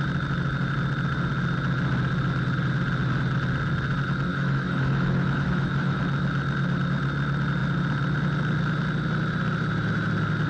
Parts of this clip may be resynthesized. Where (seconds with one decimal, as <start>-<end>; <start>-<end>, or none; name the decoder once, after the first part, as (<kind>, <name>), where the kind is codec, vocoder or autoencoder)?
4.3-6.0 (autoencoder, DAC-VAE)